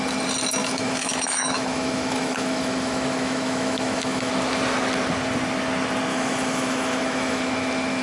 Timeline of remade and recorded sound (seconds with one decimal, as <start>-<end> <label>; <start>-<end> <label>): 0.0-0.6 recorded; 0.6-4.3 remade; 4.3-6.1 recorded; 6.1-7.4 remade; 7.4-8.0 recorded